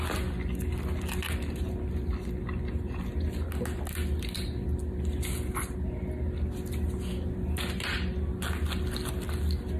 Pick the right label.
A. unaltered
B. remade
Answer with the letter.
A